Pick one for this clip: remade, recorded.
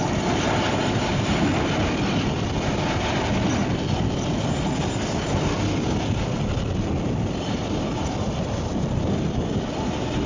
recorded